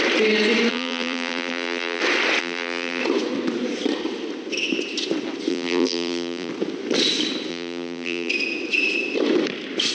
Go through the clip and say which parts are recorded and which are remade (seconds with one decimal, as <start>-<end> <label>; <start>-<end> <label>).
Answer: 0.0-0.7 recorded; 0.7-2.0 remade; 2.0-2.4 recorded; 2.4-3.0 remade; 3.0-5.5 recorded; 5.5-6.5 remade; 6.5-7.5 recorded; 7.5-8.3 remade; 8.3-9.9 recorded